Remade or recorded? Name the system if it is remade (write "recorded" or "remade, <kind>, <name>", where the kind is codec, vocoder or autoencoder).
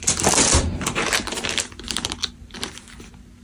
remade, vocoder, BigVGAN v2